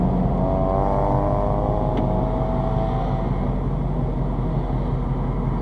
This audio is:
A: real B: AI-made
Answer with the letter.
A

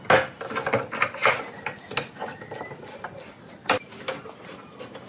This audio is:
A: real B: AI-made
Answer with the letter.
A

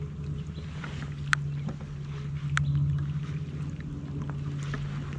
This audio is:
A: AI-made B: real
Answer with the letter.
B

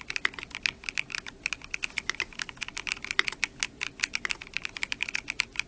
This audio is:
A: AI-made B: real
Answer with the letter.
B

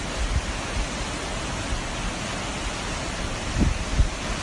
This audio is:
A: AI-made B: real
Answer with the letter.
B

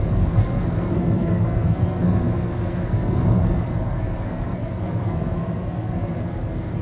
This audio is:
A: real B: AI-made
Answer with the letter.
B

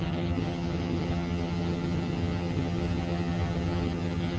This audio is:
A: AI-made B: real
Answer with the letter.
A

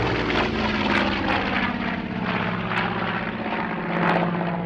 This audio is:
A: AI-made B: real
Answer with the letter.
B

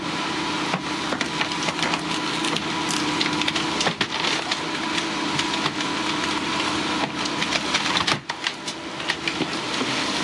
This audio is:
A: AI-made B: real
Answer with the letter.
B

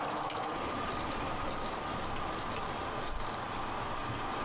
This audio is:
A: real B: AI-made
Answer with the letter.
A